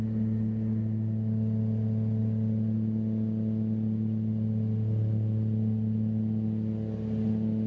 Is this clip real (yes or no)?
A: yes